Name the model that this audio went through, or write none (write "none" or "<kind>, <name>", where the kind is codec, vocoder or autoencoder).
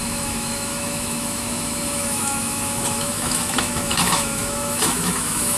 autoencoder, DAC-VAE